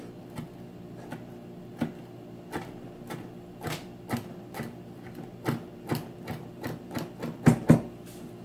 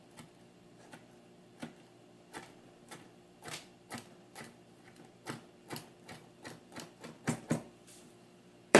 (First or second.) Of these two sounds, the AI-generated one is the second